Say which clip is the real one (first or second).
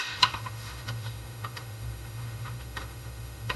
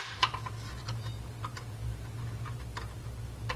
second